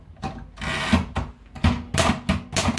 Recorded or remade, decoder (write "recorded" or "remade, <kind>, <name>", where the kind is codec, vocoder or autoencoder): recorded